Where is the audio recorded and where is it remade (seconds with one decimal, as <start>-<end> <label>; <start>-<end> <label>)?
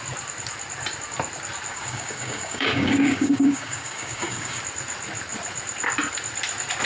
0.0-1.7 recorded; 1.7-4.6 remade; 4.6-6.9 recorded